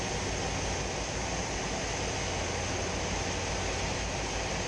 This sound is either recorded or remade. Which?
recorded